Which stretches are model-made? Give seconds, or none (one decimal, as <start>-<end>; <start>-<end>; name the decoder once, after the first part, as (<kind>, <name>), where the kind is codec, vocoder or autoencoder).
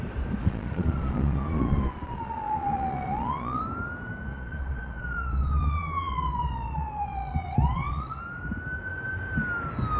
0.4-3.6 (vocoder, Vocos); 4.3-8.2